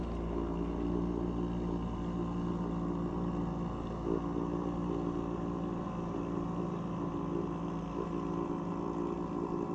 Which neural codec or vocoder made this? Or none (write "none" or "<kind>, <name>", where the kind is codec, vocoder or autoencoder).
none